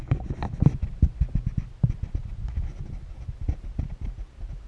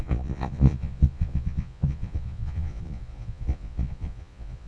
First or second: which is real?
first